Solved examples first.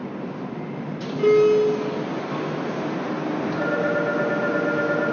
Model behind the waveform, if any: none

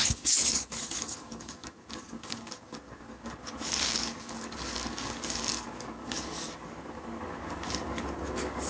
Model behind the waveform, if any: codec, DAC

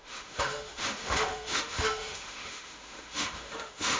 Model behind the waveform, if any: autoencoder, DAC-VAE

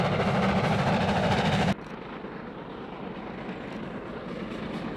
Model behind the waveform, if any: none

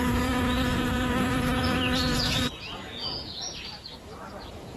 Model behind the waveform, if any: vocoder, Vocos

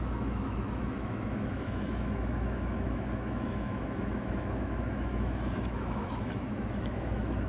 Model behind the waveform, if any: autoencoder, DAC-VAE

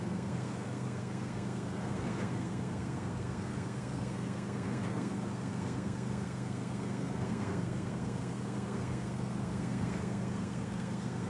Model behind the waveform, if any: codec, SNAC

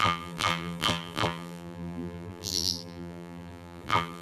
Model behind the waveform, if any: vocoder, BigVGAN v2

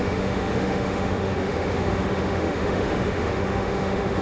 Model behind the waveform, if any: autoencoder, DAC-VAE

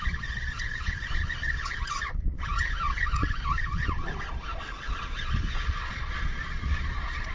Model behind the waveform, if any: vocoder, Vocos